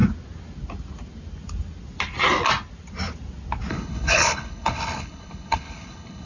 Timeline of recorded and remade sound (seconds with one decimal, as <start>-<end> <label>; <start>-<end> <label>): 0.0-3.7 recorded; 3.7-6.2 remade